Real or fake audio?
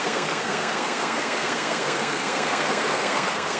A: fake